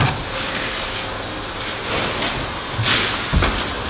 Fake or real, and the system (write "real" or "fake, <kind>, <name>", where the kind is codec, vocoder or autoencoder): real